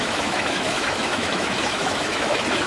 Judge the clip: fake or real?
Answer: fake